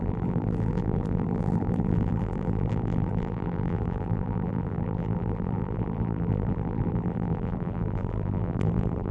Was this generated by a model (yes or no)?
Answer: yes